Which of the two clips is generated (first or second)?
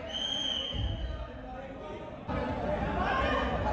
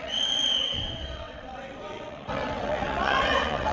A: second